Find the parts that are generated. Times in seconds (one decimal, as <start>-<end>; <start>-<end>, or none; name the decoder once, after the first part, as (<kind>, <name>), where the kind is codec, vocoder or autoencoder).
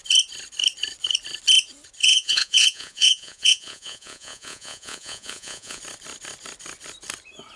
2.0-5.8 (vocoder, Vocos)